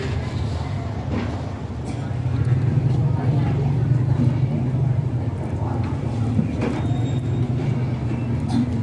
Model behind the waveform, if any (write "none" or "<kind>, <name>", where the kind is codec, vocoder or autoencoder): none